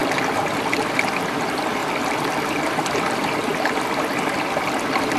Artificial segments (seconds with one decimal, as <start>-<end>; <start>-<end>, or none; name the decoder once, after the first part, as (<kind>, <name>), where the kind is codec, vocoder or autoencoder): 1.8-2.4 (vocoder, BigVGAN v2)